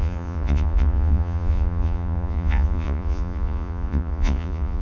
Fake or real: fake